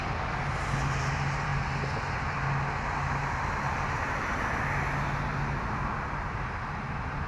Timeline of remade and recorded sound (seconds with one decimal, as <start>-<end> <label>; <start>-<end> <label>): 0.0-5.3 recorded; 5.3-5.9 remade; 5.9-7.3 recorded